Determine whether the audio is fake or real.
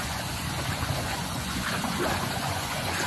fake